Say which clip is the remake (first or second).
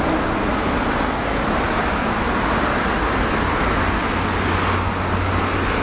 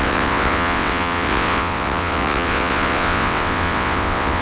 second